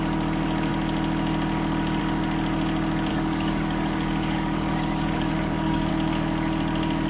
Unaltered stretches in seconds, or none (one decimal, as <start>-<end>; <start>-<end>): 0.0-3.1; 5.9-7.1